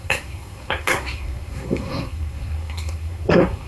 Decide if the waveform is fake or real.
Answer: fake